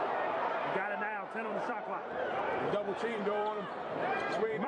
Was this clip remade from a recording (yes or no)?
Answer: yes